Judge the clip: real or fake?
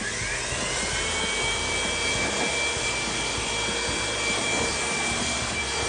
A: real